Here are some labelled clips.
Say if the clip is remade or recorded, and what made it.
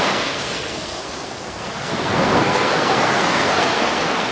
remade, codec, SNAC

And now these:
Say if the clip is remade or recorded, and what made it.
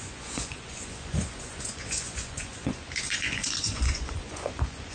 remade, vocoder, Vocos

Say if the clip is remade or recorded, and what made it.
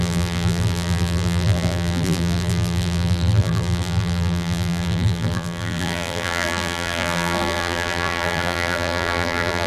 remade, vocoder, BigVGAN v2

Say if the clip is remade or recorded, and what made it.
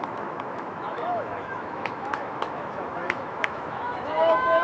remade, autoencoder, DAC-VAE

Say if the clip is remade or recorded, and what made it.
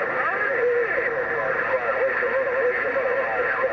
recorded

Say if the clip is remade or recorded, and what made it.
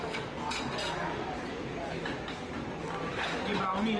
recorded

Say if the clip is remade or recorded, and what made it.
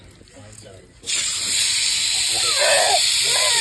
recorded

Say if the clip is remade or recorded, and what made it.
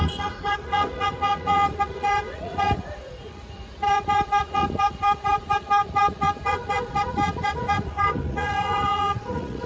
remade, vocoder, Vocos